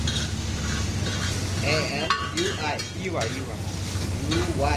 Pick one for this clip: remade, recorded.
recorded